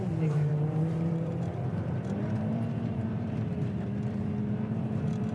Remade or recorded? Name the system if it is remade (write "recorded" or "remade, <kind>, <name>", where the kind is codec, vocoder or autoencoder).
remade, vocoder, BigVGAN v2